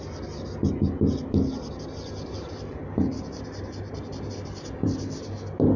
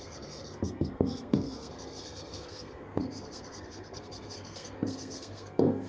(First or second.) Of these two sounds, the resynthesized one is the second